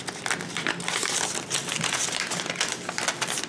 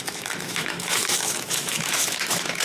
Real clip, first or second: first